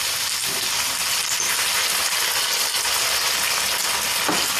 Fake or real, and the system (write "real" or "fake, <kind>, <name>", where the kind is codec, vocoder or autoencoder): real